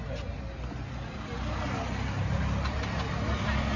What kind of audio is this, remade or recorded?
recorded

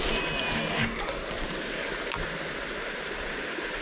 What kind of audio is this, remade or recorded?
recorded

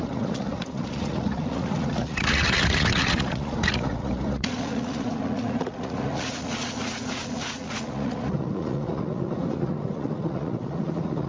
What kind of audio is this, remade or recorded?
remade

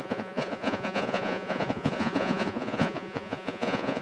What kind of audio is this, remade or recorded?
remade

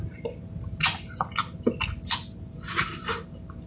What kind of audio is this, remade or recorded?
recorded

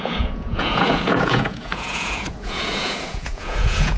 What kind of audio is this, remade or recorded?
remade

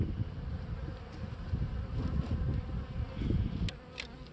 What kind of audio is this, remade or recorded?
recorded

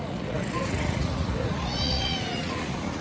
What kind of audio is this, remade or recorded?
remade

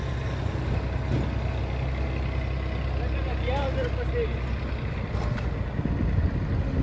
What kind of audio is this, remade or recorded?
recorded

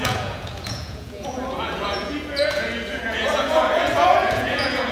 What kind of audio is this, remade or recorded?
remade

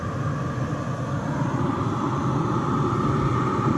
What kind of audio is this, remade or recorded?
recorded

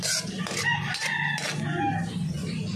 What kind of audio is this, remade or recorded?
recorded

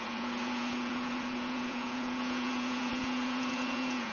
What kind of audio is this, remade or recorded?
remade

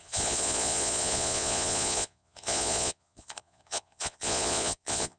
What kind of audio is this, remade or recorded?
remade